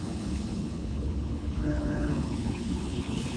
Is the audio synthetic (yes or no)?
yes